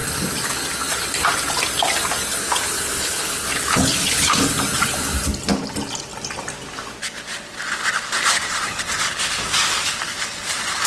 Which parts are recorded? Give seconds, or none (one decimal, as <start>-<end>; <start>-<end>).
0.0-2.3; 4.4-10.9